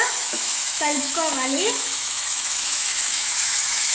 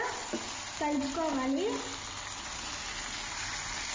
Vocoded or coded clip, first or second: first